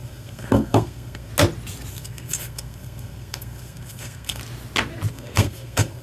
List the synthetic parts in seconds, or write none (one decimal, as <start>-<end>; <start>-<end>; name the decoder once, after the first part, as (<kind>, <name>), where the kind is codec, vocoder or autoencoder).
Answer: 0.0-1.3 (codec, SNAC); 1.9-4.4; 5.1-6.0